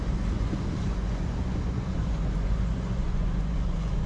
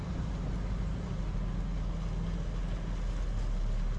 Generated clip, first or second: first